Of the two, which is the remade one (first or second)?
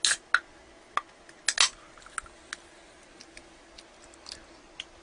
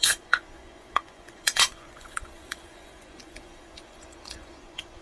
second